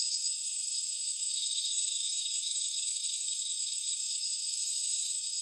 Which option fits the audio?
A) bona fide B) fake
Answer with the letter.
B